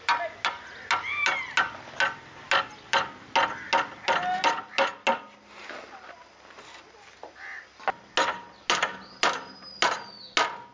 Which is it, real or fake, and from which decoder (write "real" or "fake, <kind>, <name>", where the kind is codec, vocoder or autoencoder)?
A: real